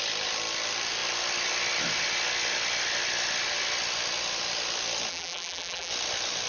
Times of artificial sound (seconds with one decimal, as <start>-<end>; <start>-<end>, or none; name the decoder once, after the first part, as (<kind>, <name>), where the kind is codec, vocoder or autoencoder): 5.1-5.9 (vocoder, BigVGAN v2)